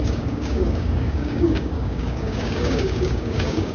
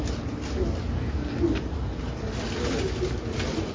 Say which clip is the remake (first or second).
first